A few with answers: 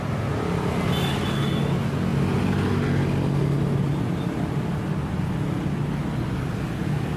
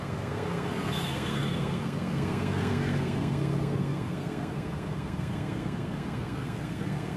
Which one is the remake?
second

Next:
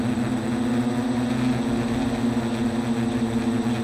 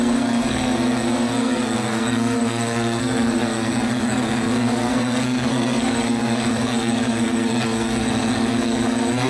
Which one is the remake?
second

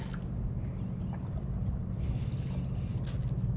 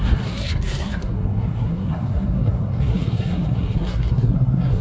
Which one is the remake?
second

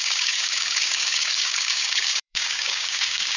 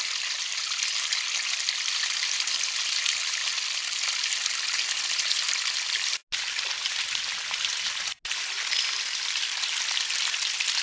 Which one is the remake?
first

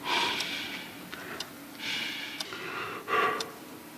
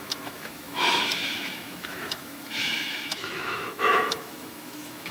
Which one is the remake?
second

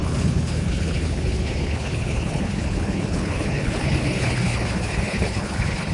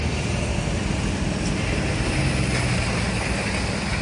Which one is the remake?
first